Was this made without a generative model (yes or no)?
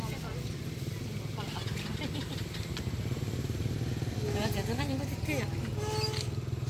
yes